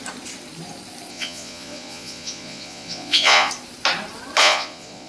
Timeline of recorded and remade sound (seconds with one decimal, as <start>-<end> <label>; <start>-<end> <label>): 0.0-1.1 recorded; 1.1-3.5 remade; 3.5-4.4 recorded; 4.4-5.1 remade